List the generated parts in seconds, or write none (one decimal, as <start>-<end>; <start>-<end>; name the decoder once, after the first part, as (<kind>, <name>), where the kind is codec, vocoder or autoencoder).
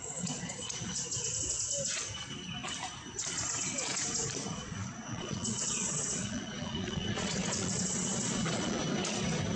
0.0-1.0 (vocoder, Vocos); 4.5-8.8